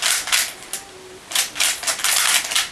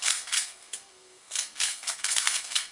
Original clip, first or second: first